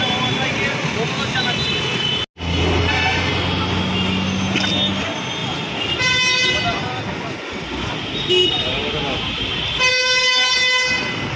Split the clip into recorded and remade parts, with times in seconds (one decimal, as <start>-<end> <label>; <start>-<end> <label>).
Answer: 0.0-9.9 recorded; 9.9-10.5 remade; 10.5-11.4 recorded